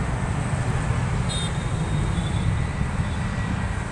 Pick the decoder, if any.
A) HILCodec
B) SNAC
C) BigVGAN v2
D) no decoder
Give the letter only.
D